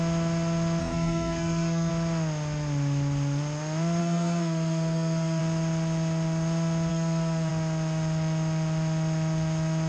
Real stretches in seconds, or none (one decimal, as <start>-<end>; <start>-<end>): 0.0-0.8; 1.9-4.0; 5.4-6.9; 7.5-9.9